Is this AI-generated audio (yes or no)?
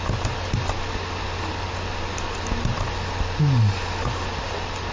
no